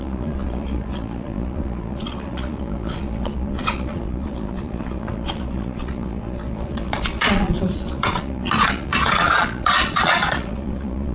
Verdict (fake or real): fake